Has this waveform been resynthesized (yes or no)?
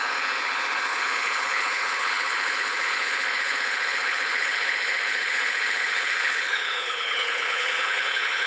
yes